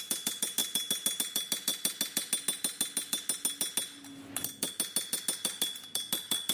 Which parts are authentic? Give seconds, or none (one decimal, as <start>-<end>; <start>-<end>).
0.0-6.5